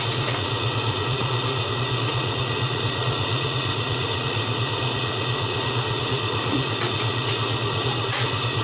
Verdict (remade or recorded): remade